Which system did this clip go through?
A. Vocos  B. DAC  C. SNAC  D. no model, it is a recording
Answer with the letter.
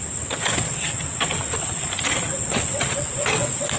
D